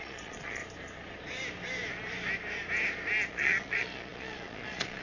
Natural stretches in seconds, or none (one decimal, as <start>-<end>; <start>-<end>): 0.6-3.3